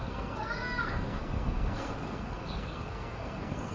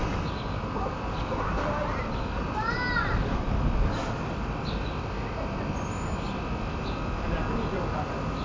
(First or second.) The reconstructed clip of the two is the first